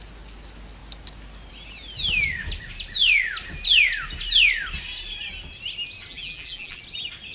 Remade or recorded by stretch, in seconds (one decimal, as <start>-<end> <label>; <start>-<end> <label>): 0.0-6.1 recorded; 6.1-6.8 remade; 6.8-7.3 recorded